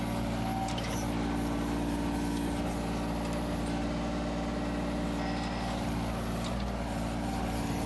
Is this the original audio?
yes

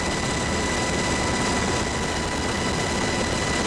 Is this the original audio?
yes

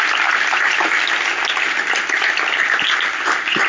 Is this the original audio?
yes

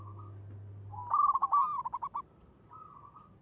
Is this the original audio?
yes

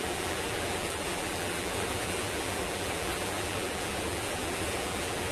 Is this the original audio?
no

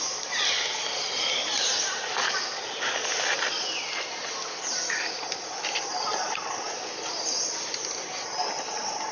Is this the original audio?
yes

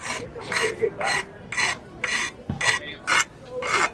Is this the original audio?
yes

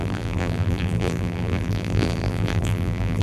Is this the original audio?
no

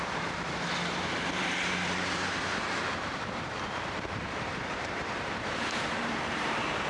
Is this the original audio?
no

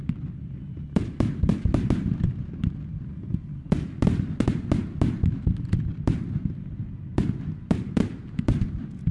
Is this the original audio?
yes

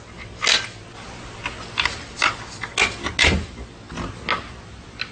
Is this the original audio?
yes